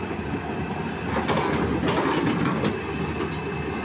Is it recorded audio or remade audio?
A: recorded